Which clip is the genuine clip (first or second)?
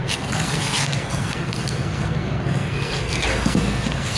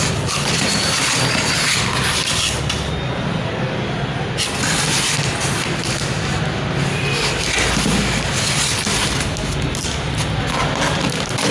second